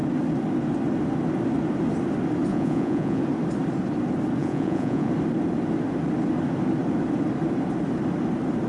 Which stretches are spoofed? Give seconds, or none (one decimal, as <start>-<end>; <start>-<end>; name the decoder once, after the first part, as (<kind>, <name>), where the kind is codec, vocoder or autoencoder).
2.5-3.2 (vocoder, Vocos); 4.4-5.1